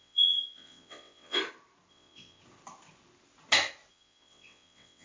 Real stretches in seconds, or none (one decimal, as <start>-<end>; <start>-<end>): 1.4-1.9; 2.4-3.9